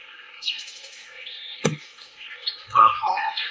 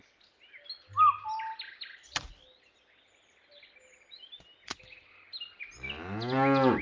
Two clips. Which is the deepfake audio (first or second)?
first